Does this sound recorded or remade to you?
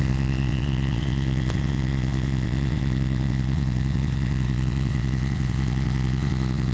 remade